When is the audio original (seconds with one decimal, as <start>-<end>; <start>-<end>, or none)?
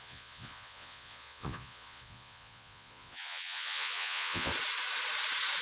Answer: 4.5-5.6